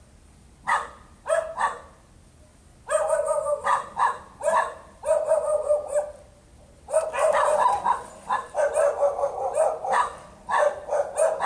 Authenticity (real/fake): real